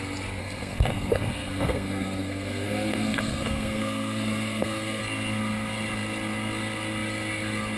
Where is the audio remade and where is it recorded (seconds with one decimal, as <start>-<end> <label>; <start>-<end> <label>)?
0.0-0.4 recorded; 0.4-5.0 remade; 5.0-7.8 recorded